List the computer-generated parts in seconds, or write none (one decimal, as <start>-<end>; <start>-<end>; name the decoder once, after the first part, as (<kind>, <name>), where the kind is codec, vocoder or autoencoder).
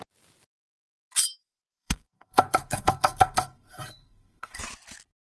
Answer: 1.4-4.6 (codec, SNAC)